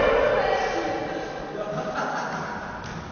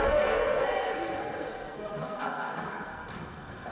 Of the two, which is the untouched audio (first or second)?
first